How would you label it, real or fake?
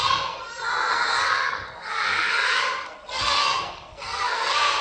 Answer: fake